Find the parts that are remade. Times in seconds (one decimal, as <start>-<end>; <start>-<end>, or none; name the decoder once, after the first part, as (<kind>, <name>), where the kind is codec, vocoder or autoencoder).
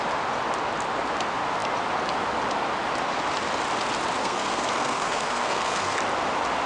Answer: 4.2-6.0 (codec, SNAC)